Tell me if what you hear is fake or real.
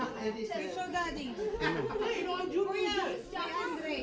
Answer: real